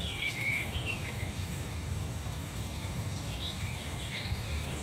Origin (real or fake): fake